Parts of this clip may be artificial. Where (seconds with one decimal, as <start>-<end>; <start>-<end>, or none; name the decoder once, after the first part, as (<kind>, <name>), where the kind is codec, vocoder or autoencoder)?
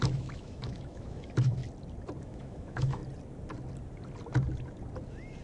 0.0-1.6 (autoencoder, DAC-VAE); 2.2-3.0